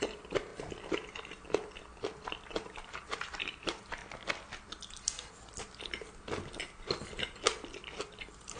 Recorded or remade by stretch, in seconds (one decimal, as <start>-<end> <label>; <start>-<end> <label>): 0.0-0.5 remade; 0.5-2.5 recorded; 2.5-4.0 remade; 4.0-8.2 recorded; 8.2-8.6 remade